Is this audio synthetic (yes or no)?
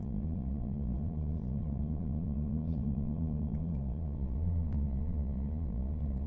yes